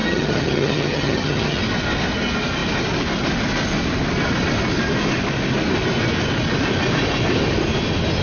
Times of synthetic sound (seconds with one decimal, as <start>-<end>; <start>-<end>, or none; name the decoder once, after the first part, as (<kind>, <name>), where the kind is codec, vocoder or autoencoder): 0.0-1.6 (vocoder, HiFi-GAN)